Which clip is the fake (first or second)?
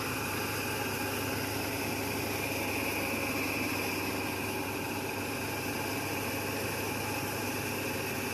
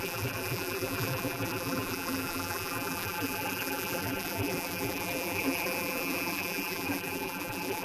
second